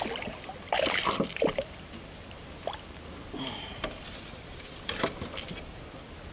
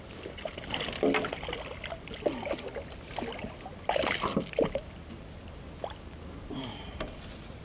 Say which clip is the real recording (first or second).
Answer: second